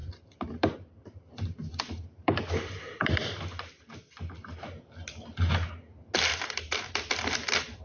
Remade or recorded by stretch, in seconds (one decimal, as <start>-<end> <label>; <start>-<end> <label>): 0.0-4.3 remade; 4.3-6.3 recorded; 6.3-6.8 remade; 6.8-7.8 recorded

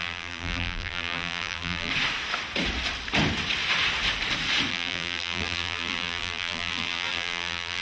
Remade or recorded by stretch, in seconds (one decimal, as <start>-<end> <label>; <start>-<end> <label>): 0.0-1.9 remade; 1.9-4.7 recorded; 4.7-7.8 remade